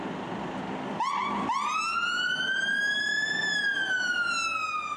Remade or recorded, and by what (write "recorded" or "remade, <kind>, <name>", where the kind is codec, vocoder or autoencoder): recorded